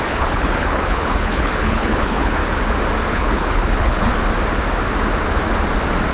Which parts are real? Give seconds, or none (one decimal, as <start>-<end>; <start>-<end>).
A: 2.4-3.1; 4.1-6.1